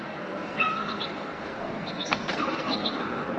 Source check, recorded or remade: remade